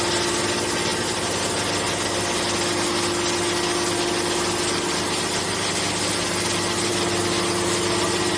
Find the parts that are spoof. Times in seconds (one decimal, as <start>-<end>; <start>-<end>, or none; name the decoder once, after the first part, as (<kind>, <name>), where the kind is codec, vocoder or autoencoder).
none